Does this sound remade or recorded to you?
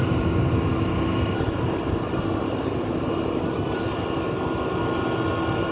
recorded